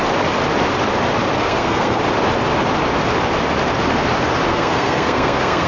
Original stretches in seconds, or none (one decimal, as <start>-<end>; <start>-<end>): 0.0-1.4; 2.0-4.5